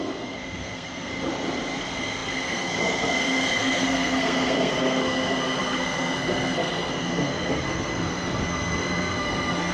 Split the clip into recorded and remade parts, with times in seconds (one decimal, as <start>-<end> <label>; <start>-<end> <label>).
0.0-1.1 remade; 1.1-1.8 recorded; 1.8-9.7 remade